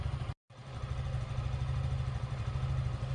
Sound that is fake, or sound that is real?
real